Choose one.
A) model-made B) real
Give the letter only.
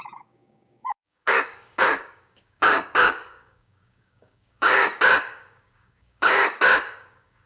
A